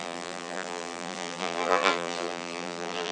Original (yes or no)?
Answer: no